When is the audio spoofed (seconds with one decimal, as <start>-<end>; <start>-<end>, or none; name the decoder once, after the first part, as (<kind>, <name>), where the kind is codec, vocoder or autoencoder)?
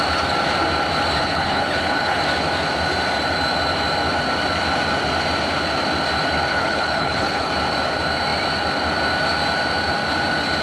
1.2-2.2 (codec, HILCodec); 6.5-7.5